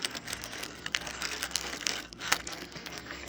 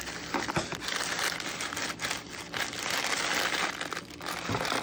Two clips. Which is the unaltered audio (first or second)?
second